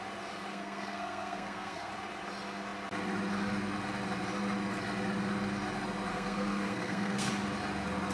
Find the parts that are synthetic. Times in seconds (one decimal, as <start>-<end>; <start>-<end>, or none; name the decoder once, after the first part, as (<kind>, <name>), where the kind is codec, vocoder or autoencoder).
0.5-1.9 (codec, SNAC); 6.1-7.3